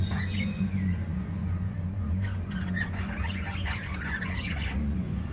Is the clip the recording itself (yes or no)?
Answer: no